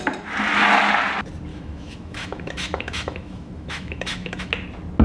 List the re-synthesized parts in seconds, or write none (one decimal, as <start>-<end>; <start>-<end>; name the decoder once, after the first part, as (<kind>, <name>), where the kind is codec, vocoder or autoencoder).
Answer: 1.5-4.5 (autoencoder, DAC-VAE)